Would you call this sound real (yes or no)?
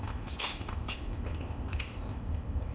no